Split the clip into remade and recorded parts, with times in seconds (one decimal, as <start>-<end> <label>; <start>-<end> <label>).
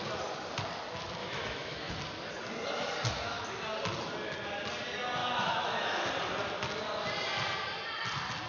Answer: 0.0-1.2 recorded; 1.2-1.9 remade; 1.9-5.2 recorded; 5.2-6.1 remade; 6.1-8.5 recorded